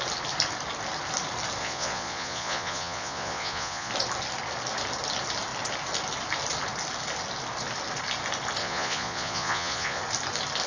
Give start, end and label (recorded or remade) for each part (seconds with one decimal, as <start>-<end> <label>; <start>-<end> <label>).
0.0-1.6 recorded; 1.6-3.9 remade; 3.9-8.6 recorded; 8.6-10.0 remade; 10.0-10.7 recorded